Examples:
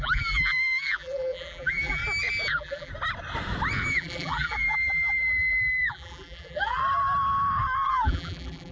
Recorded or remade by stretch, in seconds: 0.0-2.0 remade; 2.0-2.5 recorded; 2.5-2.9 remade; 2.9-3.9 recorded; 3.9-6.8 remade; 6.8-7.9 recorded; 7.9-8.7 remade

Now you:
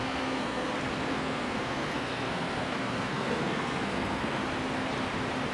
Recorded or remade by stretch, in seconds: 0.0-0.7 remade; 0.7-1.1 recorded; 1.1-4.4 remade; 4.4-5.5 recorded

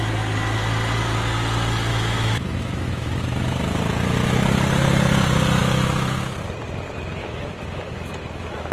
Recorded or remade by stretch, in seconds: 0.0-1.9 recorded; 1.9-3.1 remade; 3.1-5.6 recorded; 5.6-6.2 remade; 6.2-7.2 recorded; 7.2-8.7 remade

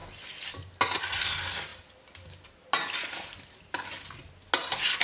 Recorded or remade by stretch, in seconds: 0.0-1.0 recorded; 1.0-1.7 remade; 1.7-5.0 recorded

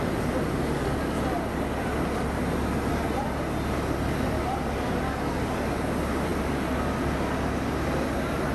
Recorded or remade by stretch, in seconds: 0.0-8.5 recorded

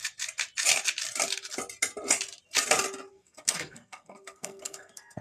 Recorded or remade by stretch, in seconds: 0.0-3.1 recorded; 3.1-5.2 remade

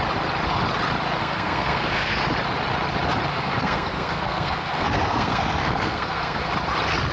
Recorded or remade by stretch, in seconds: 0.0-1.2 recorded; 1.2-2.2 remade; 2.2-3.3 recorded; 3.3-6.5 remade; 6.5-7.1 recorded

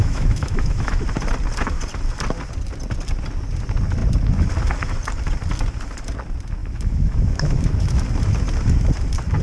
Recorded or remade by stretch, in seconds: 0.0-1.0 remade; 1.0-6.6 recorded; 6.6-8.0 remade; 8.0-9.4 recorded